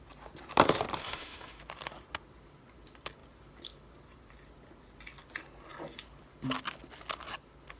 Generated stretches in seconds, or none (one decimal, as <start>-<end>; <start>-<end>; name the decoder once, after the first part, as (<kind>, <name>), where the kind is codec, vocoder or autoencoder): 1.0-1.6 (autoencoder, DAC-VAE)